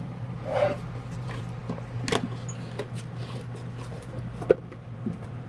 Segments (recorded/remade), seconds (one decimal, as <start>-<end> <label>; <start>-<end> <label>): 0.0-1.6 remade; 1.6-4.7 recorded; 4.7-5.5 remade